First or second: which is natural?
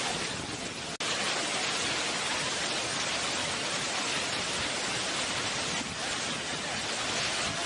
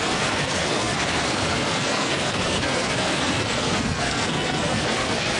first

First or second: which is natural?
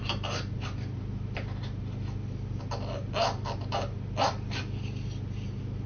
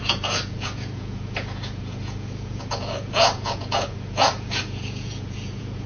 first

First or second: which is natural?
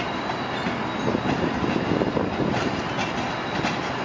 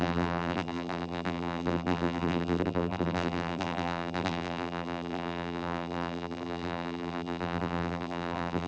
first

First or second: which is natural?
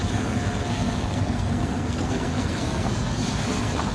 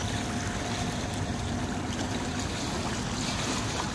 second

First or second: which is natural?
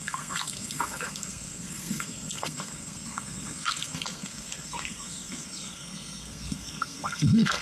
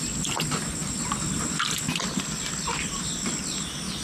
second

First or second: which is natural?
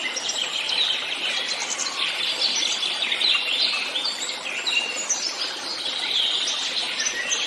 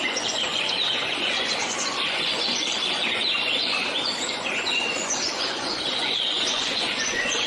first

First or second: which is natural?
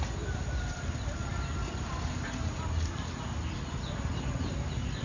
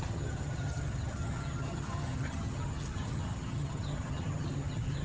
first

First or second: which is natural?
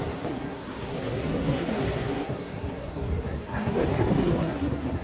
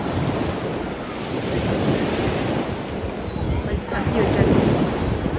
second